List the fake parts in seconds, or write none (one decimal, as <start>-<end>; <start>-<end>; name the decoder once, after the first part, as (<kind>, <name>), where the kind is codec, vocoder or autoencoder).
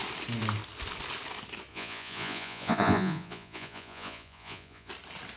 1.7-4.9 (vocoder, Vocos)